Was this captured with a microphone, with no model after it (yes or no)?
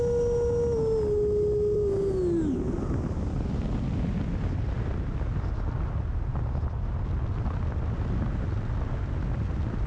yes